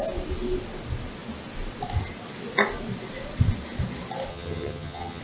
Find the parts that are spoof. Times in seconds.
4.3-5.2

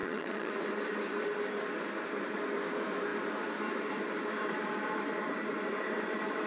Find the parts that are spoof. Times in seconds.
0.0-0.5

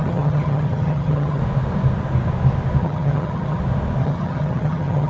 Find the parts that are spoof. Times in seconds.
0.0-1.4; 2.8-3.6; 4.0-5.1

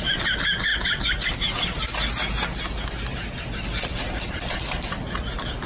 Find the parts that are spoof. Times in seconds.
none

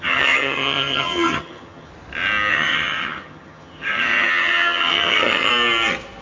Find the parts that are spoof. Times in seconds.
0.0-1.9; 2.5-5.5